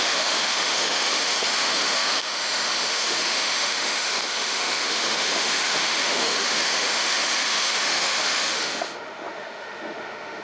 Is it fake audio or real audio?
fake